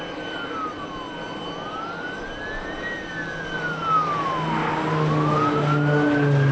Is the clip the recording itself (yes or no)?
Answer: yes